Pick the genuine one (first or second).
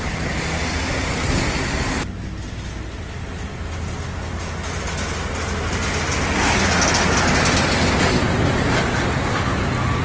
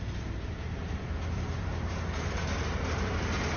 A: first